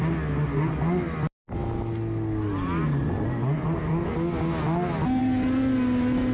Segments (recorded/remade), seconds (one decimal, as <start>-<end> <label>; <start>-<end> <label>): 0.0-6.3 recorded